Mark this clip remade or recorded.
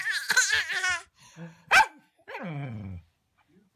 recorded